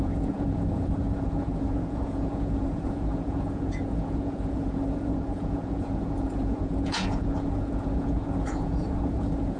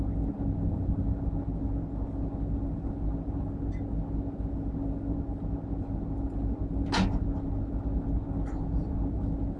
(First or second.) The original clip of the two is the second